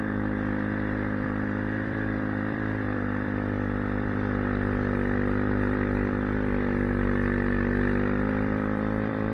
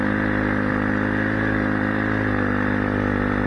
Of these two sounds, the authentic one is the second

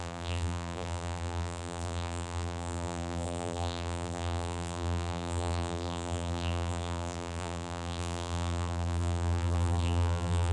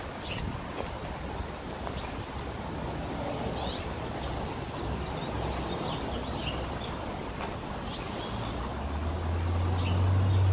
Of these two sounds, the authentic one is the second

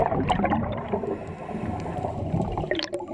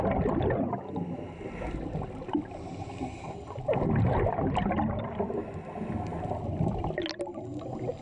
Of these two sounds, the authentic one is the second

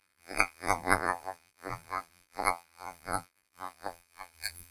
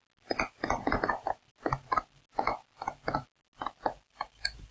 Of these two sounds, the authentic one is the second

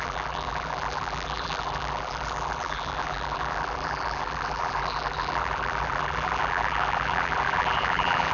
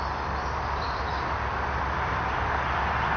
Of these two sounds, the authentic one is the second